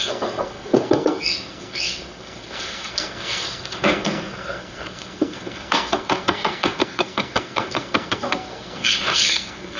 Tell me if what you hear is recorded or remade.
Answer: remade